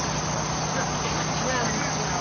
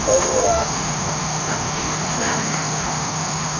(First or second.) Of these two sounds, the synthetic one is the second